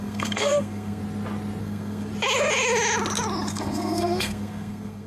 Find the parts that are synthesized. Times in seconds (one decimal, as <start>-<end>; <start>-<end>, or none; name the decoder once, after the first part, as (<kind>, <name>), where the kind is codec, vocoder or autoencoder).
0.0-1.0 (codec, SNAC); 1.6-2.1; 3.5-5.1